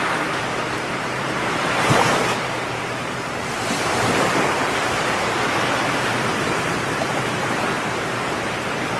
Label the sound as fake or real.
fake